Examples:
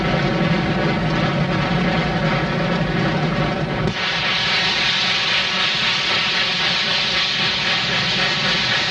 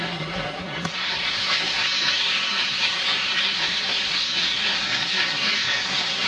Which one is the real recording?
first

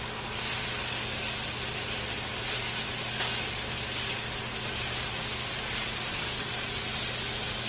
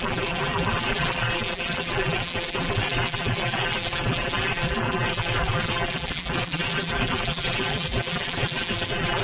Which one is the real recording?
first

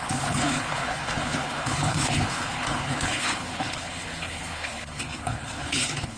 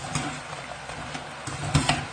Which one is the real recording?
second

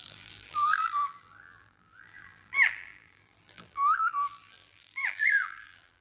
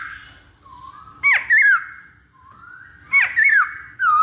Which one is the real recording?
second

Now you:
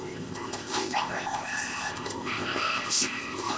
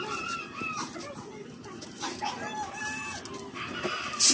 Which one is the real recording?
second